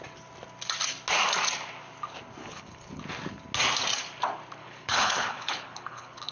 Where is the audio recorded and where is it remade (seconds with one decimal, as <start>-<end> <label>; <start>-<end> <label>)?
0.0-2.4 recorded; 2.4-3.0 remade; 3.0-4.6 recorded; 4.6-6.3 remade